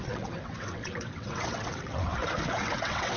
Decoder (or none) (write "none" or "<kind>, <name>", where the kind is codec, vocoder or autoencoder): vocoder, WaveNeXt